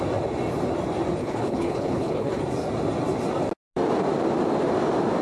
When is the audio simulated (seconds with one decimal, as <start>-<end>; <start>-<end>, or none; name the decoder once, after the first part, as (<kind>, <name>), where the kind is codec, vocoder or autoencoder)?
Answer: 1.2-2.4 (codec, HILCodec)